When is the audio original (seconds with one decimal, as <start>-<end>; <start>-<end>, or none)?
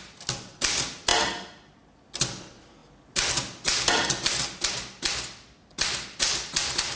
0.0-7.0